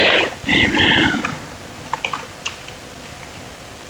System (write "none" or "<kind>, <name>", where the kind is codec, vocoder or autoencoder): none